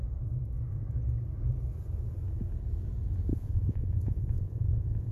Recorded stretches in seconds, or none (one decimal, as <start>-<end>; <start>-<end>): 0.0-3.3